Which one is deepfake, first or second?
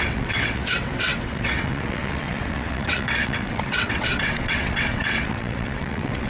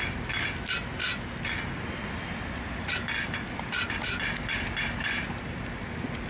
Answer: first